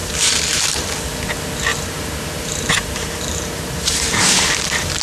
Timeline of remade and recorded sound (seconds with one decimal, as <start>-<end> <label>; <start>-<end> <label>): 0.0-0.8 remade; 0.8-1.7 recorded; 1.7-4.4 remade; 4.4-5.0 recorded